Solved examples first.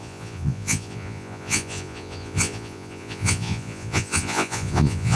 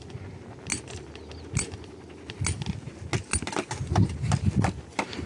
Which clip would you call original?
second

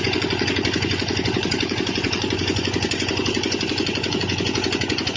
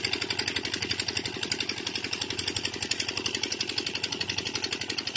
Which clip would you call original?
second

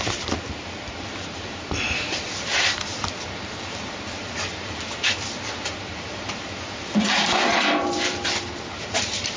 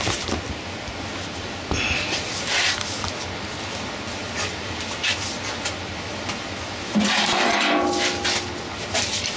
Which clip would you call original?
second